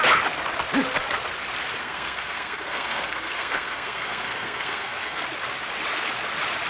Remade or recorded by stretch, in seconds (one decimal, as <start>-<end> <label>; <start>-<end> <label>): 0.0-1.8 recorded; 1.8-5.2 remade; 5.2-6.7 recorded